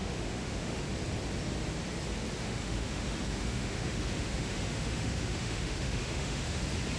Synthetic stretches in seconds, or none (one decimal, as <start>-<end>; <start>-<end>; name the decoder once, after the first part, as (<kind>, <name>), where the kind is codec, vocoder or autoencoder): 0.0-0.8 (autoencoder, DAC-VAE); 2.4-6.6